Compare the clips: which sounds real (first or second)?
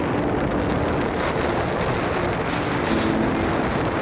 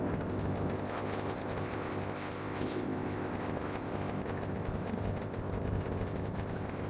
first